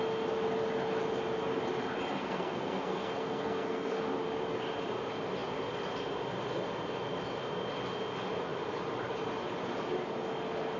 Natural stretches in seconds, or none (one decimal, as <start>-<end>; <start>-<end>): 0.0-2.1; 4.0-10.8